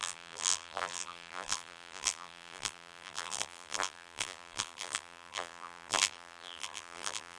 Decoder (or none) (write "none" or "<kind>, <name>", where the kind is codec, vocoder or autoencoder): vocoder, BigVGAN v2